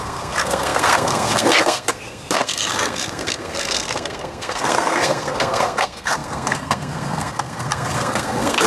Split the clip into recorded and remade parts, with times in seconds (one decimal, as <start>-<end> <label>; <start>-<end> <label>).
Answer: 0.0-8.7 remade